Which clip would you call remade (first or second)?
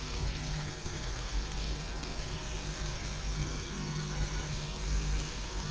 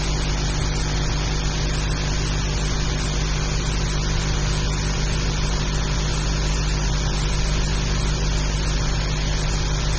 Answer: first